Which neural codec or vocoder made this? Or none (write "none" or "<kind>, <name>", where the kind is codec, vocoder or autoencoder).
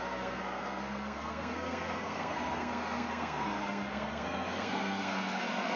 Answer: codec, SNAC